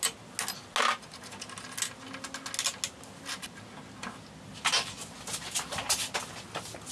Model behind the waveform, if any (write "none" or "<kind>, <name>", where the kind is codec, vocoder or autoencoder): none